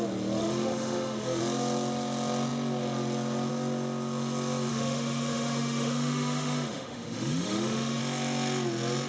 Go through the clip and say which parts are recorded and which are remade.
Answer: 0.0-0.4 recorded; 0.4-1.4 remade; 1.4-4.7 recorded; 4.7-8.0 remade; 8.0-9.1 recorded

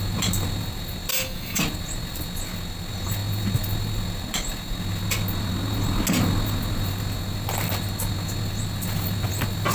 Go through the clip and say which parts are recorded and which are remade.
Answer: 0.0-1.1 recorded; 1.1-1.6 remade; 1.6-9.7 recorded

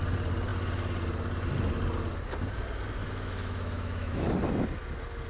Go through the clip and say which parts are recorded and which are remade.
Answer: 0.0-3.0 recorded; 3.0-4.3 remade; 4.3-5.3 recorded

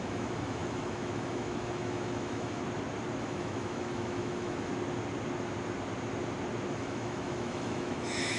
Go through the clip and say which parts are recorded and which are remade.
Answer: 0.0-2.6 remade; 2.6-3.2 recorded; 3.2-4.7 remade; 4.7-6.7 recorded; 6.7-8.4 remade

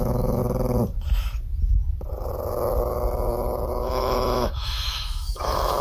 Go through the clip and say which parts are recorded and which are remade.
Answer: 0.0-0.4 remade; 0.4-3.7 recorded; 3.7-5.8 remade

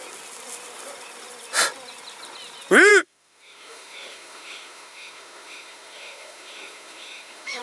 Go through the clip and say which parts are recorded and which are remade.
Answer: 0.0-2.9 recorded; 2.9-7.6 remade